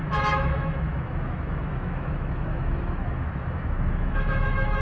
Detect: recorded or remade remade